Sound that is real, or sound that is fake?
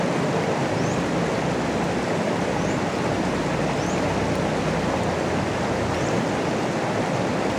real